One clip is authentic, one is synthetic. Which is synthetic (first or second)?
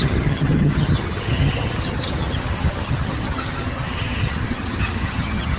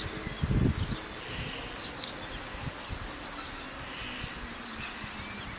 first